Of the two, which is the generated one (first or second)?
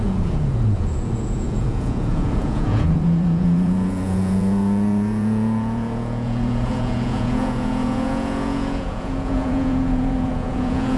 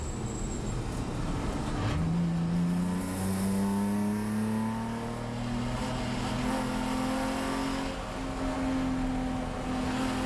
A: first